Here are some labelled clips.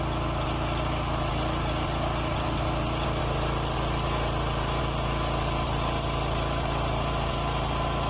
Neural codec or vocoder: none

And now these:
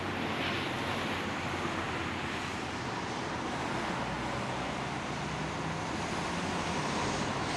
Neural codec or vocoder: none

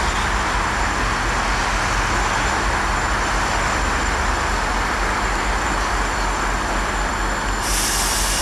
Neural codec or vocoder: none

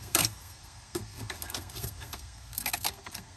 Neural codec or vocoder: codec, SNAC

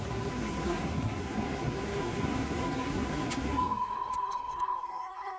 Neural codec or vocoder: codec, SNAC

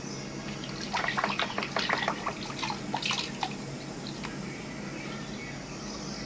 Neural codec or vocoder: none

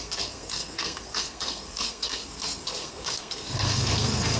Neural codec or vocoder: codec, SNAC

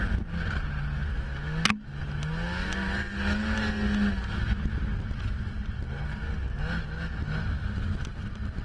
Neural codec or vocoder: none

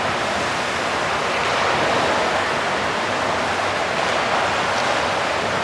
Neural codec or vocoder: none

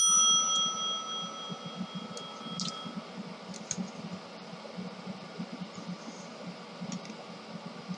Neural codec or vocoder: none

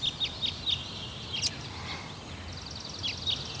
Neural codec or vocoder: none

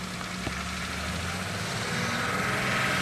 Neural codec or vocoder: none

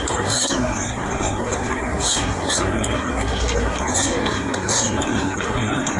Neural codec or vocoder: codec, SNAC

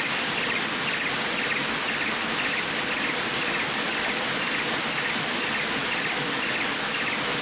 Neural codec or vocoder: none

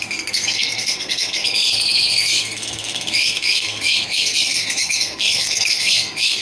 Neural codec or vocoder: codec, SNAC